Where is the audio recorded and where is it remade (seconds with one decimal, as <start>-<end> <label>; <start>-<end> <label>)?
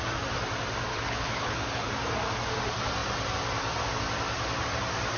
0.0-0.9 recorded; 0.9-1.9 remade; 1.9-5.2 recorded